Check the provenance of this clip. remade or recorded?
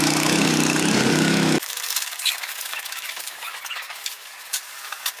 remade